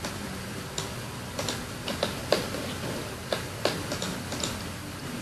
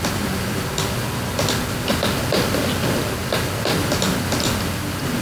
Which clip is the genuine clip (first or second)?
second